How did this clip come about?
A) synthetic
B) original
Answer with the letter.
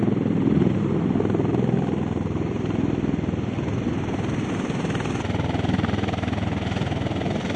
B